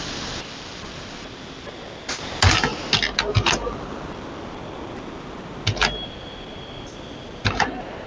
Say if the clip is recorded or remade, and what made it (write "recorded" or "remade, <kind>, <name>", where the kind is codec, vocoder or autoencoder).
recorded